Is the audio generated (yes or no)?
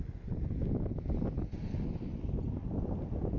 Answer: no